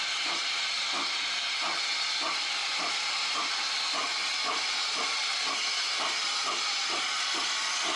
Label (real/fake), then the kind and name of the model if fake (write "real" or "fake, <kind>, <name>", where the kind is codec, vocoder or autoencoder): real